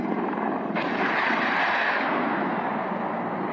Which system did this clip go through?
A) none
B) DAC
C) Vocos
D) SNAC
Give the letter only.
A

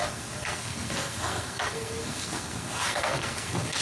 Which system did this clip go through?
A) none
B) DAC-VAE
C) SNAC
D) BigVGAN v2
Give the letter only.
C